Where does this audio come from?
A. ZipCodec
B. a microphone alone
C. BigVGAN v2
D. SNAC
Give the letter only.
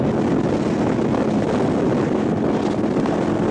B